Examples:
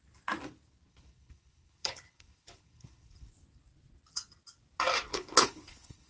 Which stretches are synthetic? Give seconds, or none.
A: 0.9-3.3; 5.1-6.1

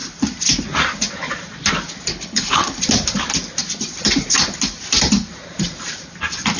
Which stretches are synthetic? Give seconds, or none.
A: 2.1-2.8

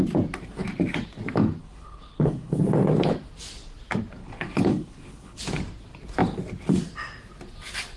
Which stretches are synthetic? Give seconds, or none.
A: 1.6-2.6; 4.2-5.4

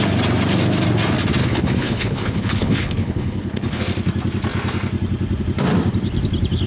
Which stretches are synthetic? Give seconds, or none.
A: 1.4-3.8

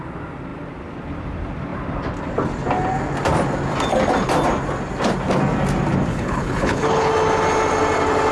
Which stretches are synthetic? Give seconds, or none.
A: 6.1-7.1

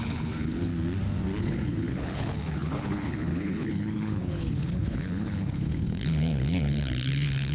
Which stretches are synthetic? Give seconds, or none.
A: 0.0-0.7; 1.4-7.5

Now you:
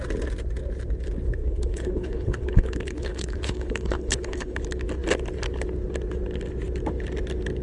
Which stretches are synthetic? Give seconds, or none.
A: 1.4-4.6

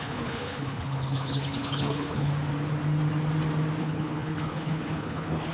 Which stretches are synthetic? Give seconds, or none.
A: 0.0-2.3; 3.8-5.5